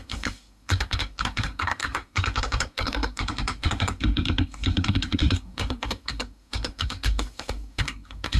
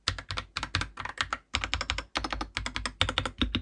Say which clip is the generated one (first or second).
first